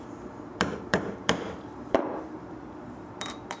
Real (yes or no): no